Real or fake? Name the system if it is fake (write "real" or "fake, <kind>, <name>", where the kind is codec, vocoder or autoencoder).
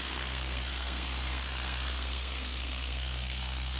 fake, codec, SNAC